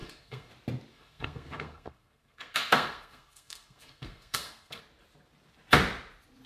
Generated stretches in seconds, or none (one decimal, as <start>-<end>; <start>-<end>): 0.0-0.5; 0.9-4.8